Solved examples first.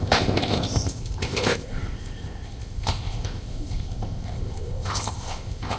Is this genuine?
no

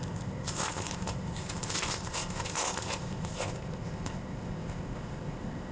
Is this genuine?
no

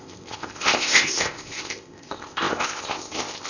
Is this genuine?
no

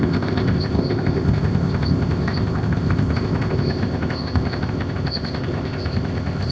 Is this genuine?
no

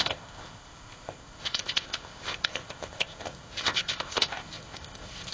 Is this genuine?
no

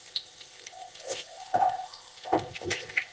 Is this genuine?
no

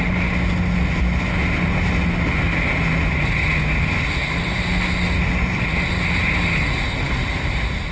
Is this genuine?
yes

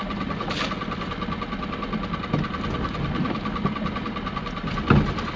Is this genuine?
yes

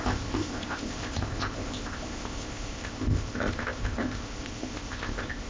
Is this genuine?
no